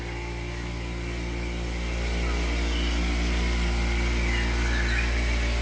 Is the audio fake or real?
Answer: real